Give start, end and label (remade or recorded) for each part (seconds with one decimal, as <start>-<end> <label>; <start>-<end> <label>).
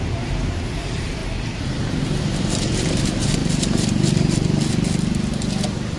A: 0.0-1.2 remade; 1.2-3.0 recorded; 3.0-3.4 remade; 3.4-5.6 recorded; 5.6-6.0 remade